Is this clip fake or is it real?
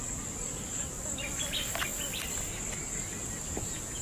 real